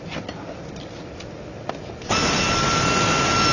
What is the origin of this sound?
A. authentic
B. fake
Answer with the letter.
A